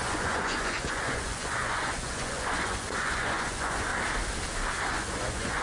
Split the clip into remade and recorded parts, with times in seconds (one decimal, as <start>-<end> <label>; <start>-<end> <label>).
0.0-3.9 remade; 3.9-4.9 recorded; 4.9-5.6 remade